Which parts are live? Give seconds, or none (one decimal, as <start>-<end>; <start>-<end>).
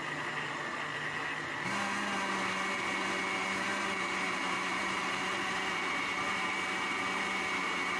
0.0-3.7